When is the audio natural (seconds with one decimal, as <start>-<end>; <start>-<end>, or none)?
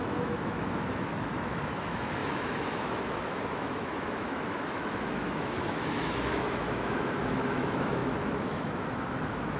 none